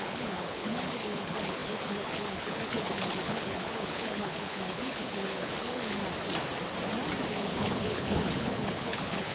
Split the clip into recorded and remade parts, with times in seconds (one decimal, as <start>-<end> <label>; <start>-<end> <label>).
0.0-6.0 remade; 6.0-7.3 recorded; 7.3-9.3 remade